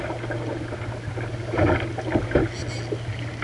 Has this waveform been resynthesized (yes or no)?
no